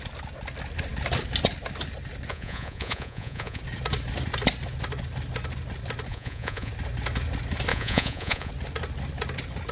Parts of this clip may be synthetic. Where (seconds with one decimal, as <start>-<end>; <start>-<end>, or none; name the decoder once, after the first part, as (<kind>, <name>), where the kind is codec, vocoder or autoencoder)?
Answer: 2.3-3.6 (vocoder, Vocos); 6.1-6.7; 7.7-8.5